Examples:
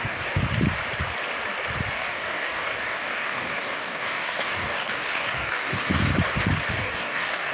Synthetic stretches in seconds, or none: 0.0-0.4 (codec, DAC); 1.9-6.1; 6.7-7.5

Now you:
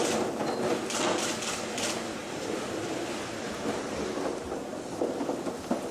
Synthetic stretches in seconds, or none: 2.2-3.5 (vocoder, BigVGAN v2); 4.7-5.5

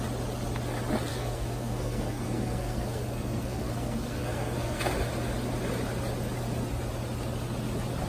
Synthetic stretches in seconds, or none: 1.1-4.8 (codec, SNAC)

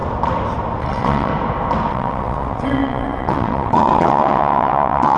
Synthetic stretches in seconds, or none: 0.8-1.3 (vocoder, WaveNeXt); 1.9-5.2

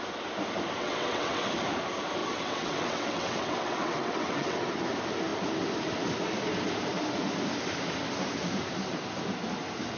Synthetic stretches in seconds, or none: 0.8-1.5 (vocoder, WaveNeXt); 2.2-4.7

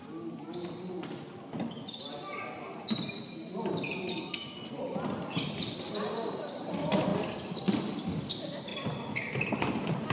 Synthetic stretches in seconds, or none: 4.1-4.8 (codec, SNAC)